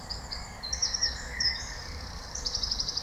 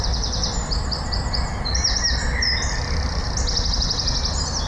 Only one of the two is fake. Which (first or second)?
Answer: first